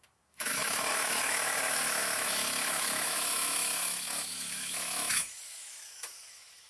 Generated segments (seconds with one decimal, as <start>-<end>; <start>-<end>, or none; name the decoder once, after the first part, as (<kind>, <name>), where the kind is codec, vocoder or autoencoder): 0.0-6.7 (autoencoder, DAC-VAE)